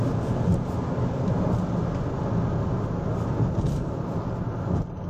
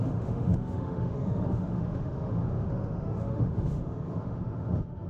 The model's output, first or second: second